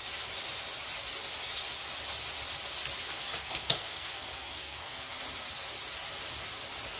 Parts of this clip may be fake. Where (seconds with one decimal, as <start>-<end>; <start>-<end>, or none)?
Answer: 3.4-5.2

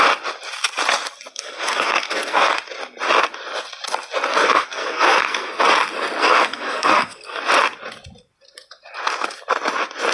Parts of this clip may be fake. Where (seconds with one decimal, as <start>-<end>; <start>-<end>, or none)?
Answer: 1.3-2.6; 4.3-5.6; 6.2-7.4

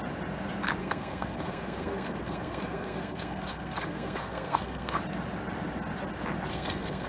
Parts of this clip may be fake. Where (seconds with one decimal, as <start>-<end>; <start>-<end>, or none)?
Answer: 0.8-5.0; 6.5-7.1

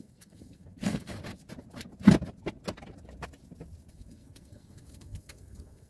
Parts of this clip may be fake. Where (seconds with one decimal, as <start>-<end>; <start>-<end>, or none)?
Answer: 0.0-1.2; 3.9-5.9

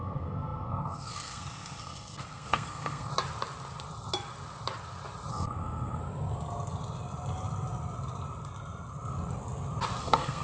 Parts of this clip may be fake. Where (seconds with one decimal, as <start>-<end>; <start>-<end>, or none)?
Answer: 0.0-3.1; 5.3-6.0; 10.0-10.4

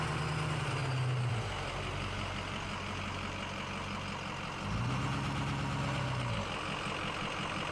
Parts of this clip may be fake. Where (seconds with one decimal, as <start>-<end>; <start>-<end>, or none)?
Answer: none

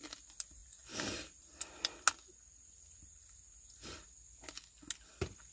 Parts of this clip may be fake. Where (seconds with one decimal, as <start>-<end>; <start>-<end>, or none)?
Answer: none